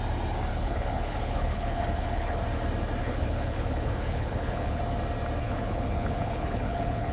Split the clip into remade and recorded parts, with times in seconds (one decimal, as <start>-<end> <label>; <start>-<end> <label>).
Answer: 0.0-0.5 recorded; 0.5-2.4 remade; 2.4-3.0 recorded; 3.0-4.8 remade; 4.8-5.4 recorded; 5.4-7.1 remade